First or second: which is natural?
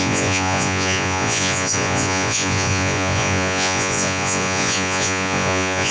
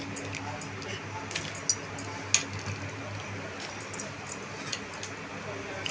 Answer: second